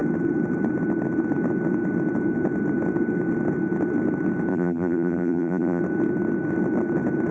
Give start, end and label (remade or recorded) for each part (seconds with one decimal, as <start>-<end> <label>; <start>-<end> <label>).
0.0-4.5 recorded; 4.5-5.8 remade; 5.8-7.3 recorded